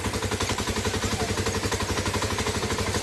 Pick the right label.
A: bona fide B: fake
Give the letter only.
A